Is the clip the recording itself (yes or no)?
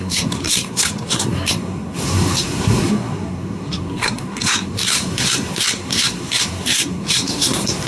no